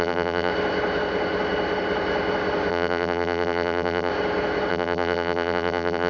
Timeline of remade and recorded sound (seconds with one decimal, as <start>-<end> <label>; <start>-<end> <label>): 0.0-0.5 remade; 0.5-2.7 recorded; 2.7-4.1 remade; 4.1-4.7 recorded; 4.7-6.1 remade